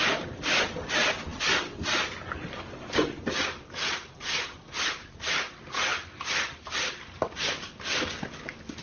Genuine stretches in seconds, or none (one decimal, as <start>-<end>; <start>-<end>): 0.0-5.9; 7.4-8.8